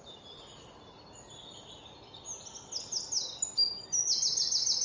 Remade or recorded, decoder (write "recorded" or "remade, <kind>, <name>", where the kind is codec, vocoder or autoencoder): recorded